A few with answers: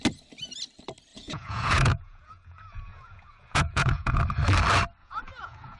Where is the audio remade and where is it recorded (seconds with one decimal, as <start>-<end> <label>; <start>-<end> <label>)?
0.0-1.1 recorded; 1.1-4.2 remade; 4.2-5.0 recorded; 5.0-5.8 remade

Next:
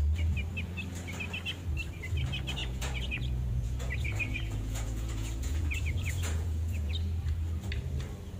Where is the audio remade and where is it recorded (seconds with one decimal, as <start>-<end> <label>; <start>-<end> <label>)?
0.0-2.6 recorded; 2.6-6.9 remade; 6.9-8.4 recorded

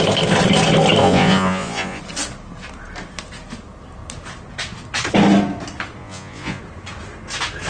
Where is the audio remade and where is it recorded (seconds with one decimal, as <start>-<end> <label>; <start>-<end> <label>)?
0.0-1.0 recorded; 1.0-2.0 remade; 2.0-6.0 recorded; 6.0-6.6 remade; 6.6-7.7 recorded

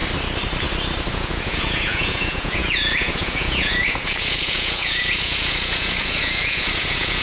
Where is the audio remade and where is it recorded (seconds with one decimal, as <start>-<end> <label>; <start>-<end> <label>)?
0.0-1.1 recorded; 1.1-7.2 remade

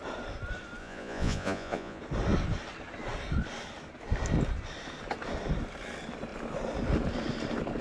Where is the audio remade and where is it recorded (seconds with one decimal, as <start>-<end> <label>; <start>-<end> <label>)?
0.0-0.8 recorded; 0.8-2.0 remade; 2.0-7.8 recorded

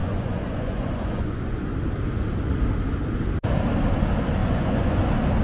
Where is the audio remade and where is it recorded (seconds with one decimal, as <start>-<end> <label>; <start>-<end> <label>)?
0.0-1.7 remade; 1.7-4.4 recorded; 4.4-5.0 remade; 5.0-5.4 recorded